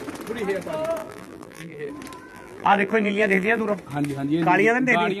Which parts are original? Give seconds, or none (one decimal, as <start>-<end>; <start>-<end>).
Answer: 0.0-1.0; 1.9-2.3; 3.6-5.2